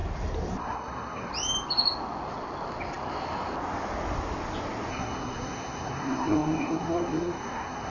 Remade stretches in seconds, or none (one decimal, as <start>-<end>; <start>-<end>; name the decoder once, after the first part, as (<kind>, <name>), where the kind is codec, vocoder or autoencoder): 0.6-1.3 (codec, SNAC); 4.9-7.9